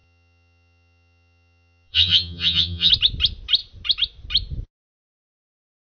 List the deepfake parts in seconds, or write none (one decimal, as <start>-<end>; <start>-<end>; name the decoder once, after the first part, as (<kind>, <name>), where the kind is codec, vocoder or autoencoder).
0.0-2.9 (vocoder, HiFi-GAN)